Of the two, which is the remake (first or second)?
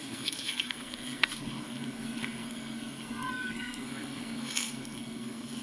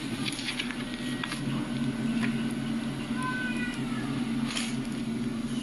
first